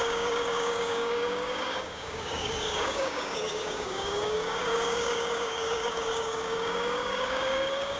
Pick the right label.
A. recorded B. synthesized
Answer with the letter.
B